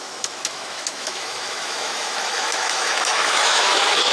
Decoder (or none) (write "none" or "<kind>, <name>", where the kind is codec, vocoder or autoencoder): autoencoder, DAC-VAE